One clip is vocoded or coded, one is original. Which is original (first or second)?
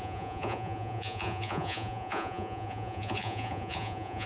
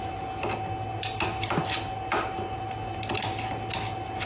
second